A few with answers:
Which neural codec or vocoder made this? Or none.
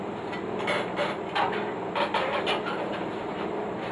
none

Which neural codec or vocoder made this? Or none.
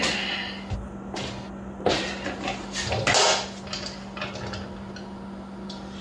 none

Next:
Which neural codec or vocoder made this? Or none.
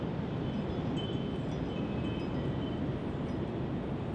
none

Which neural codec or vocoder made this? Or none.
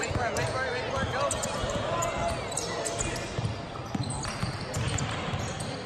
none